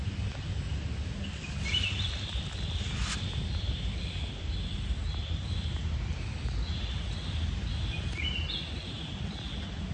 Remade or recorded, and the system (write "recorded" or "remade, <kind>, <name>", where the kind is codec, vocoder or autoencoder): recorded